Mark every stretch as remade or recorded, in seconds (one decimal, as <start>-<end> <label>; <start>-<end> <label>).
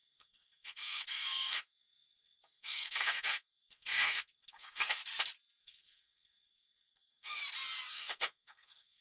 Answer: 0.0-5.0 remade; 5.0-5.6 recorded; 5.6-7.4 remade; 7.4-7.9 recorded; 7.9-9.0 remade